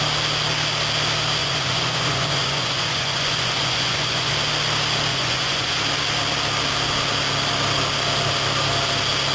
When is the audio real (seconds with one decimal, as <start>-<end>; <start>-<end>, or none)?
0.0-1.4; 4.3-5.1; 5.8-9.3